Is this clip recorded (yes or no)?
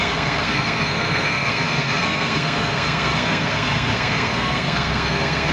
no